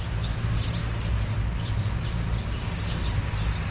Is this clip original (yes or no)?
yes